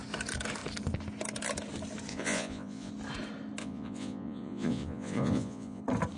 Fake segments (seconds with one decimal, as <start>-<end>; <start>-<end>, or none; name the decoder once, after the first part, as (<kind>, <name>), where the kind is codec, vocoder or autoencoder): 2.1-2.9 (vocoder, Vocos); 3.6-5.8